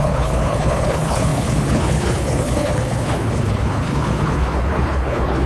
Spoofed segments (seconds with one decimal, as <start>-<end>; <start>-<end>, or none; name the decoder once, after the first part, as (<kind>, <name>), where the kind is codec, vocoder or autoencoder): 0.0-5.5 (codec, HILCodec)

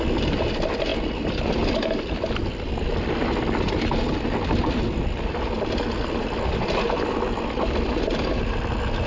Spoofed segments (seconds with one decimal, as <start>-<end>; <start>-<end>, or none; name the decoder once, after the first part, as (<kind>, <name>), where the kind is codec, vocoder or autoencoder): none

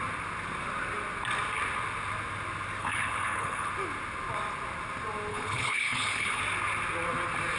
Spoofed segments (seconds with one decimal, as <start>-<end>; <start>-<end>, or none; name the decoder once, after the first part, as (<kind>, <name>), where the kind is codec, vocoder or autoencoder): 2.8-3.7 (codec, HILCodec); 5.3-6.4

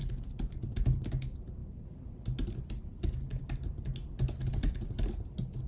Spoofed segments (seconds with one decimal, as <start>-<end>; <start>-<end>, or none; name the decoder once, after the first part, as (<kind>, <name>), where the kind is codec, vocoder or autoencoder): none

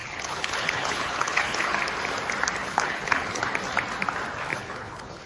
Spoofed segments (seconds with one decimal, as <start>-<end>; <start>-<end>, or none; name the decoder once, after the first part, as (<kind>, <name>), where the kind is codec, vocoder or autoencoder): 0.0-1.8 (codec, HILCodec); 2.6-3.4; 4.5-5.3

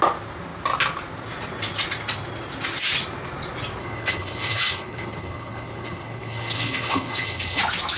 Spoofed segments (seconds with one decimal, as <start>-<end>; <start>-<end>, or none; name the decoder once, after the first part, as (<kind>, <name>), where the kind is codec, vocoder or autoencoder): 3.8-7.6 (codec, HILCodec)

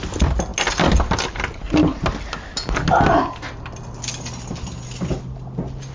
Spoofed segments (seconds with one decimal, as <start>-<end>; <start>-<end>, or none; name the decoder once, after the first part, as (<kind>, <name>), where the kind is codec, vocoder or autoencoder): none

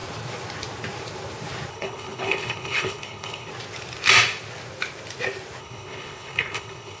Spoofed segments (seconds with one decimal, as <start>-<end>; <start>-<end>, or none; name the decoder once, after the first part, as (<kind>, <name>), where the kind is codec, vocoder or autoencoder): 1.7-3.5 (codec, HILCodec); 5.6-7.0